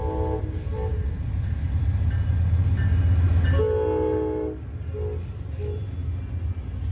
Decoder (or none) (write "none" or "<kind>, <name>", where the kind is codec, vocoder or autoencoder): none